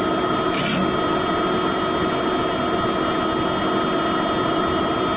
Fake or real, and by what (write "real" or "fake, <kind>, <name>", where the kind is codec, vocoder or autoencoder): real